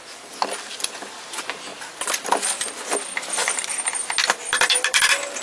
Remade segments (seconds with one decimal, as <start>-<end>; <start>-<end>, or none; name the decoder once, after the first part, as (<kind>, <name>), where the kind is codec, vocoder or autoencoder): none